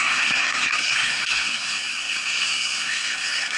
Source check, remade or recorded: remade